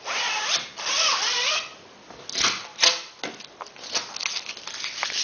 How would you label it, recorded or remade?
recorded